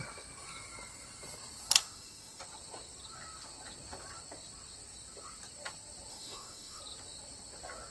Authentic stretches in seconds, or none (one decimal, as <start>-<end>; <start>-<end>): 0.0-1.8; 2.4-6.1; 6.8-7.9